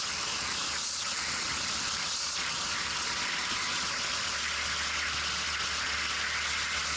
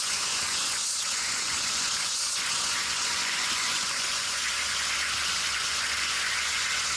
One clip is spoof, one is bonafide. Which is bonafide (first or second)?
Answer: first